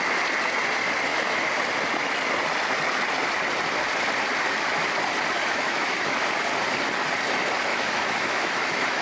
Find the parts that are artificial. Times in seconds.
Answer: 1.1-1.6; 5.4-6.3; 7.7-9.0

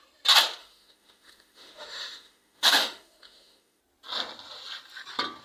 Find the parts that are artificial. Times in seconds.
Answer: 0.6-3.8